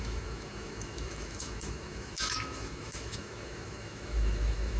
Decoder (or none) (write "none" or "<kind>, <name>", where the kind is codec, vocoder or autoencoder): autoencoder, DAC-VAE